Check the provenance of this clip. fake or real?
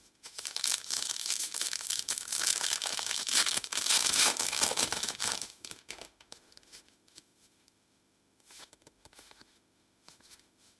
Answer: fake